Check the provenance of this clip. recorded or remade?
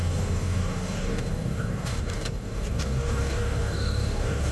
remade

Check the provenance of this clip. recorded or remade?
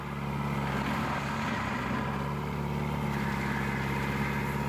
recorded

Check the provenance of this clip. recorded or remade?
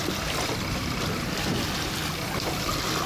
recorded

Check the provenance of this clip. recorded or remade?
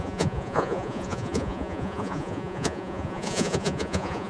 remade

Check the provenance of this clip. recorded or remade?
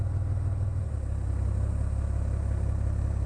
recorded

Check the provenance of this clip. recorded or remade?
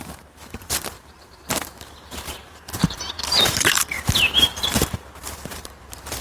remade